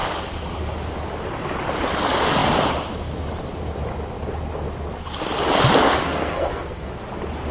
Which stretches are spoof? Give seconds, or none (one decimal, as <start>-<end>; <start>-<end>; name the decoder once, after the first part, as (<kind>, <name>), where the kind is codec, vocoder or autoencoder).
6.0-6.9 (codec, SNAC)